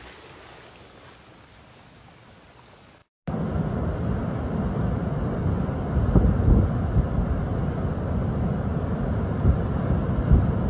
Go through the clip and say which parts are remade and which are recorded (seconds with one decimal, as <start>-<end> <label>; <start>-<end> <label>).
0.0-10.7 recorded

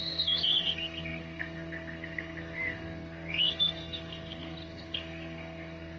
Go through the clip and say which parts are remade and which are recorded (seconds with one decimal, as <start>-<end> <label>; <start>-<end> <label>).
0.0-6.0 remade

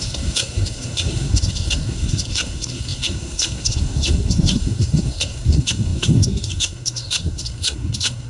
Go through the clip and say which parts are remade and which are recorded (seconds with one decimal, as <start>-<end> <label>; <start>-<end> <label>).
0.0-8.3 remade

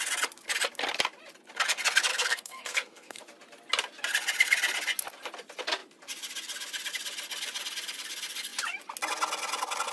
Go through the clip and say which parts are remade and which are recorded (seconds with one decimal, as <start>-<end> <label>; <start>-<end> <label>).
0.0-2.1 recorded; 2.1-3.2 remade; 3.2-9.9 recorded

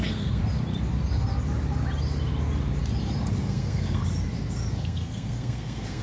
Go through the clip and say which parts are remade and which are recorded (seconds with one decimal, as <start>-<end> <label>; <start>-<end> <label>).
0.0-0.4 remade; 0.4-3.4 recorded; 3.4-4.0 remade; 4.0-4.7 recorded; 4.7-6.0 remade

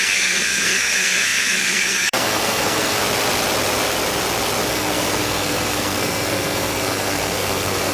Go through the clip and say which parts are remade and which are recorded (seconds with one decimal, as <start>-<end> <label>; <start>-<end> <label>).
0.0-3.0 remade; 3.0-4.7 recorded; 4.7-7.9 remade

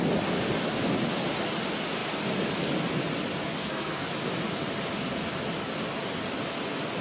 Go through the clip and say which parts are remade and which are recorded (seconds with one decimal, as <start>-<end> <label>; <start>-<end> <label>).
0.0-3.6 recorded; 3.6-4.1 remade; 4.1-7.0 recorded